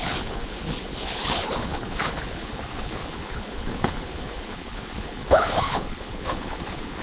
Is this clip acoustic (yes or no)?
no